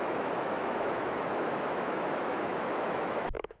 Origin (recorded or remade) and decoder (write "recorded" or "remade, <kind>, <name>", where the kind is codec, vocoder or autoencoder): remade, autoencoder, DAC-VAE